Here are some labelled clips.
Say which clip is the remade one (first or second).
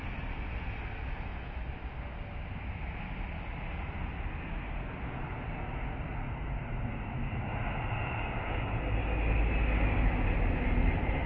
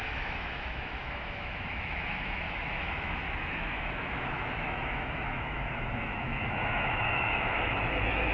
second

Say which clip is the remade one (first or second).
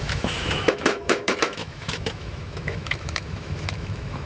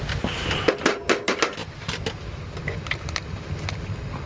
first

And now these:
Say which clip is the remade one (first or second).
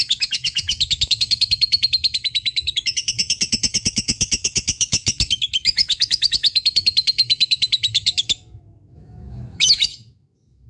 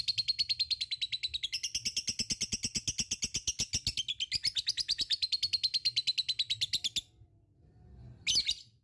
first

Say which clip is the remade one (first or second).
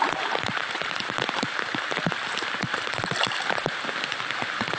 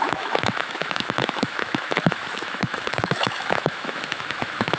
second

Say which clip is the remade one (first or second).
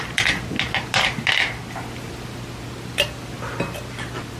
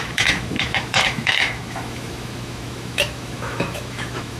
second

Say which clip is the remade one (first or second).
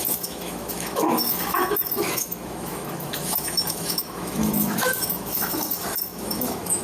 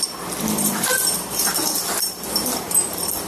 first